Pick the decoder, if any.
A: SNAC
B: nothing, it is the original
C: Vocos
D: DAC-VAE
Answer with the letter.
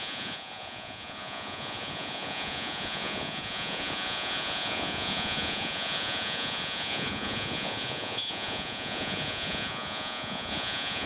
C